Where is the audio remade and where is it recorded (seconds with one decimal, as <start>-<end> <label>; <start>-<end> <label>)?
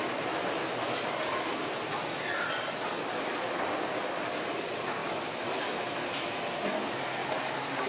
0.0-7.9 recorded